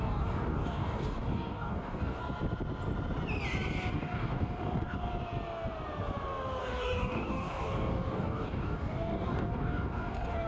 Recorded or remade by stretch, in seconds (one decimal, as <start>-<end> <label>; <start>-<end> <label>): 0.0-2.2 remade; 2.2-3.9 recorded; 3.9-5.1 remade; 5.1-6.6 recorded; 6.6-10.5 remade